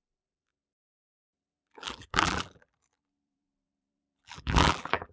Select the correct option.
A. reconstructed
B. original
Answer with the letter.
A